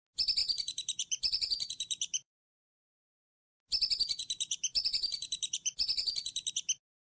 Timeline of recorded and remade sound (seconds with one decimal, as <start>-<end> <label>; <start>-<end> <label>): 0.0-0.4 recorded; 0.4-2.9 remade; 2.9-4.2 recorded; 4.2-6.5 remade; 6.5-7.2 recorded